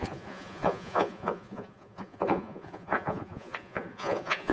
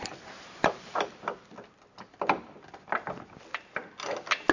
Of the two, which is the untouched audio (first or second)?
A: second